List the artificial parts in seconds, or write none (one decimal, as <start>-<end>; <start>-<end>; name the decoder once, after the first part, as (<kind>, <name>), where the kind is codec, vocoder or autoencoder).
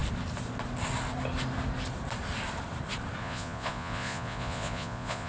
3.2-5.3 (vocoder, Vocos)